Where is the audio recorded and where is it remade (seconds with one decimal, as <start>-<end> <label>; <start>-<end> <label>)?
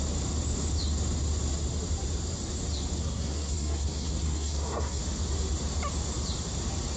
0.0-3.0 recorded; 3.0-5.0 remade; 5.0-7.0 recorded